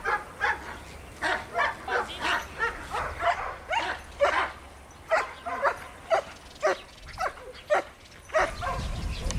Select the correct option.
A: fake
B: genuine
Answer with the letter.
B